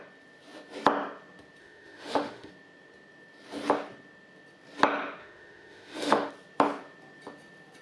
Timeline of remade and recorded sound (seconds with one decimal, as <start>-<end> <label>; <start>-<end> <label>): 0.0-1.6 recorded; 1.6-2.5 remade; 2.5-5.2 recorded; 5.2-6.3 remade; 6.3-7.8 recorded